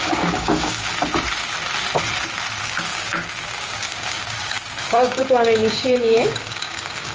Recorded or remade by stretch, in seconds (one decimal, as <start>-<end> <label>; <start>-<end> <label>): 0.0-0.9 remade; 0.9-2.6 recorded; 2.6-7.1 remade